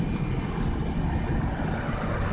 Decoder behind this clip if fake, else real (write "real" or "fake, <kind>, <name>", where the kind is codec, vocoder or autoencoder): real